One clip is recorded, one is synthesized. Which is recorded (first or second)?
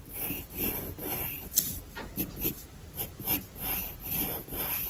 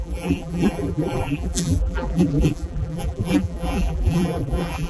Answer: first